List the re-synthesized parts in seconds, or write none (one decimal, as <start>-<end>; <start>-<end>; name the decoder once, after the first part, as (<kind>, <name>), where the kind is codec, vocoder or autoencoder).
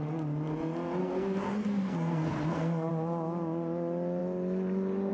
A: 1.0-2.9 (codec, SNAC)